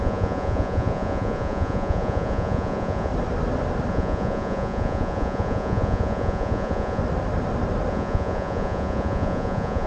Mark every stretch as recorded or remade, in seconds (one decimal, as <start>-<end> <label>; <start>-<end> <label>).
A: 0.0-3.1 remade; 3.1-3.9 recorded; 3.9-7.0 remade; 7.0-7.9 recorded; 7.9-9.9 remade